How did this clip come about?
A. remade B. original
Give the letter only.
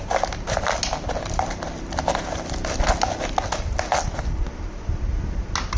B